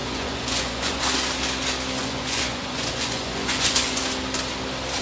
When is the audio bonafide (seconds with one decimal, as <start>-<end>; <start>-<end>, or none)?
1.0-2.0; 4.0-5.0